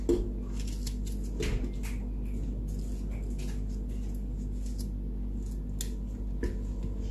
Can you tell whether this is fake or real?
real